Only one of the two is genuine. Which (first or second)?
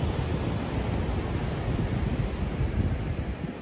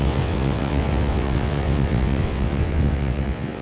first